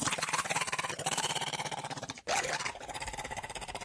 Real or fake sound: fake